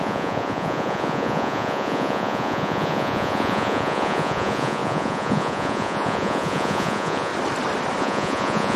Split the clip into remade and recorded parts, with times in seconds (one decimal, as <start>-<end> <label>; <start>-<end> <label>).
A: 0.0-7.3 remade; 7.3-8.0 recorded; 8.0-8.8 remade